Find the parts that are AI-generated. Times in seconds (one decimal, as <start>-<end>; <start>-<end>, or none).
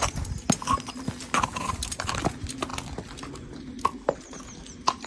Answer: 1.5-2.2